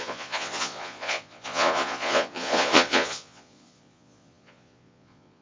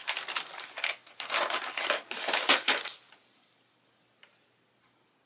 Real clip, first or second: second